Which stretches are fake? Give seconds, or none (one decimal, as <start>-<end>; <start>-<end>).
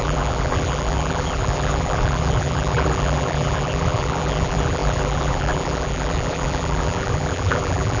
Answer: 0.0-8.0